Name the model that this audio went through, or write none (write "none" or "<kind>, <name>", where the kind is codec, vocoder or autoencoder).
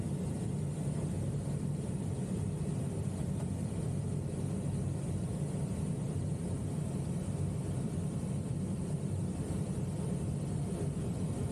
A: vocoder, BigVGAN v2